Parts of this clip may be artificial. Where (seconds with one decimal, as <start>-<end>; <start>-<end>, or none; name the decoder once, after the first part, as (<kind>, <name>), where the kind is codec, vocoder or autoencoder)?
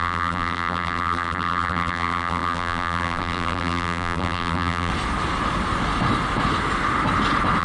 0.0-4.9 (vocoder, BigVGAN v2)